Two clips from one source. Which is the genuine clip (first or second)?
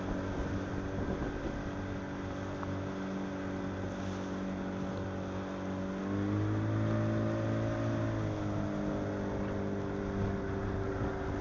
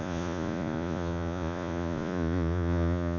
first